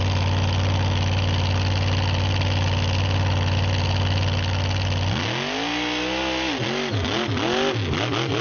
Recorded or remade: recorded